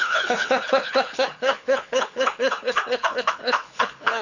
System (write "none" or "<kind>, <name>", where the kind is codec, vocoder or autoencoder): codec, HILCodec